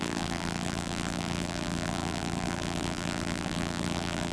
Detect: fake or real fake